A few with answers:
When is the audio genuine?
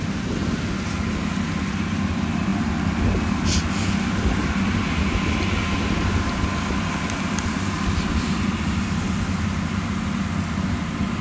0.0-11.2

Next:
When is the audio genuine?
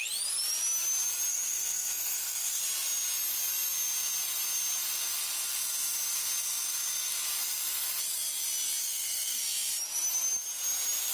0.0-1.3; 2.6-8.8; 9.4-11.1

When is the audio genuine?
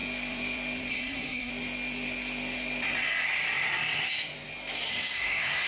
0.0-0.9; 1.5-4.9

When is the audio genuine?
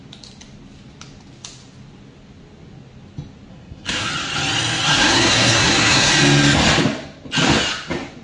0.0-3.5; 4.1-4.9; 6.1-8.2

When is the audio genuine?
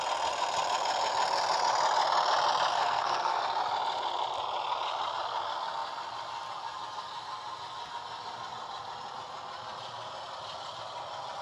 0.0-2.7; 3.4-11.4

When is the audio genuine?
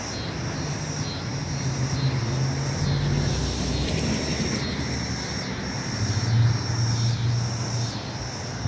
0.0-8.7